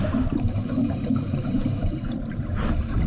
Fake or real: fake